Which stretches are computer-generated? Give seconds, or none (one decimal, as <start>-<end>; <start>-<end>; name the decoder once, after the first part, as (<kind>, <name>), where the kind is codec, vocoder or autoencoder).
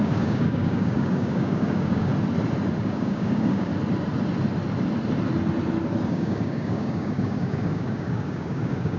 0.0-2.1 (codec, DAC); 2.8-3.7; 6.1-9.0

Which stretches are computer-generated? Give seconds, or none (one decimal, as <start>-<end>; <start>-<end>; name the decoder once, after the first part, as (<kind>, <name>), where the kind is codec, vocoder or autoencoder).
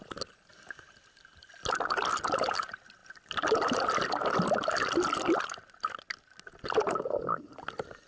none